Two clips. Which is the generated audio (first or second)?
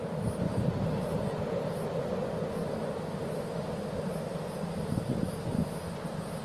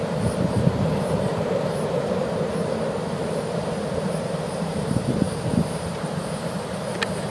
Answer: second